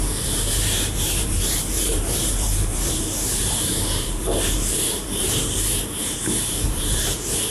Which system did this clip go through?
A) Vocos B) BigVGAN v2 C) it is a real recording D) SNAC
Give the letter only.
B